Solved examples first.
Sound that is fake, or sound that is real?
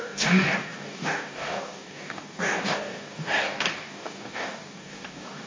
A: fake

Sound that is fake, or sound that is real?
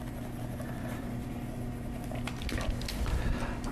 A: real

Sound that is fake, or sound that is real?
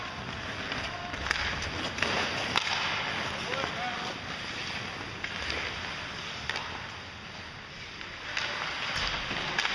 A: real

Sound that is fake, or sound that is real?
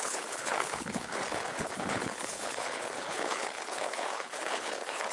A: fake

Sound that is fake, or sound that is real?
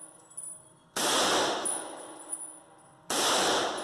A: real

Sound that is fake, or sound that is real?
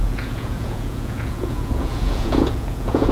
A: fake